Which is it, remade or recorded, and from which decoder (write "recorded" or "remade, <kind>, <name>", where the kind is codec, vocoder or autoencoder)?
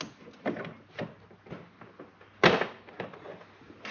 recorded